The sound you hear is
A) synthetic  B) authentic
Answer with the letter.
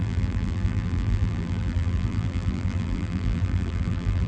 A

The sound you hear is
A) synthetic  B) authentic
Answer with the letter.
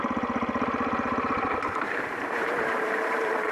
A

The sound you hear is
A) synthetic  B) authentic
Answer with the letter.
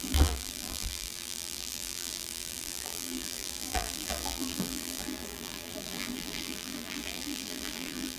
A